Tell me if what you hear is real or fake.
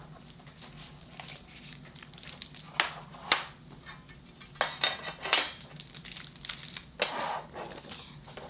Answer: real